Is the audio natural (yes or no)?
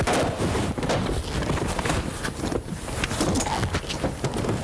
yes